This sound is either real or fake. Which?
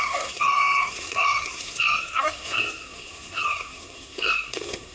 fake